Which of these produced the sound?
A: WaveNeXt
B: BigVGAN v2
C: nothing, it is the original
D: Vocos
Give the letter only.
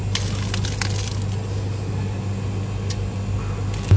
C